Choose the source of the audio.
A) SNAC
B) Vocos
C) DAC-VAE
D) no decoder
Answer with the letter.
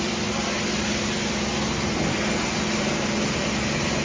D